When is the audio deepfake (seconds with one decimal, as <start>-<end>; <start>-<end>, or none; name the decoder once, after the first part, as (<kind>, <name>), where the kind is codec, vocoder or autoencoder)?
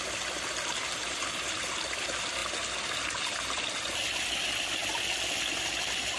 0.0-2.4 (vocoder, BigVGAN v2); 3.1-4.8